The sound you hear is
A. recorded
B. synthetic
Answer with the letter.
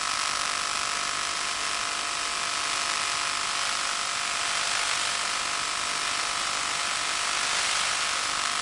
A